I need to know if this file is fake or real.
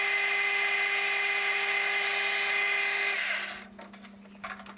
real